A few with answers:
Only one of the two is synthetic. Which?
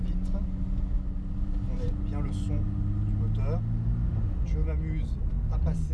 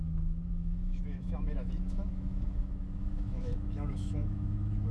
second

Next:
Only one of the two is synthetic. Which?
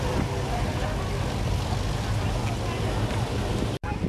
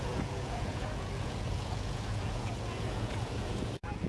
second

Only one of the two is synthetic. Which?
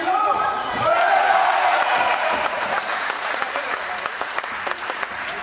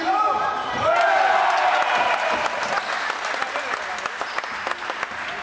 first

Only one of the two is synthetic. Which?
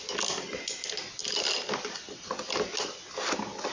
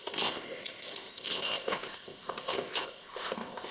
second